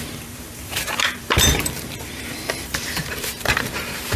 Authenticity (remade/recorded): remade